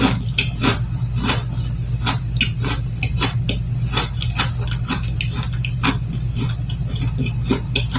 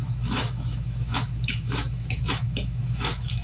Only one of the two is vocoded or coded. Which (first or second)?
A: second